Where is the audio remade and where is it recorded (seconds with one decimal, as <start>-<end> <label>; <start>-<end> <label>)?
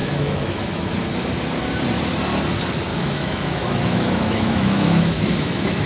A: 0.0-0.9 remade; 0.9-2.9 recorded; 2.9-5.9 remade